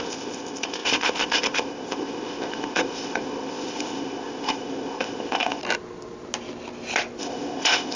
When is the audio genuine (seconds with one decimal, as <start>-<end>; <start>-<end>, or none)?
5.6-7.2

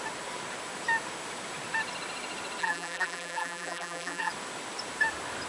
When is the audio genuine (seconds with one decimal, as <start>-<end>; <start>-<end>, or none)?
0.0-2.6; 4.3-5.5

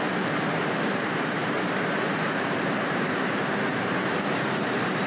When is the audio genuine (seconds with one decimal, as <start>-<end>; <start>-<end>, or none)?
none

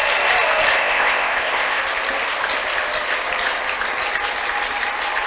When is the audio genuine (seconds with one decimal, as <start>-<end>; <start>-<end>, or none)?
0.0-0.8; 1.8-5.3